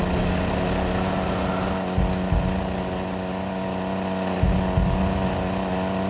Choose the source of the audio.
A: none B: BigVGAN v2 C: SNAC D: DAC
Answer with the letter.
A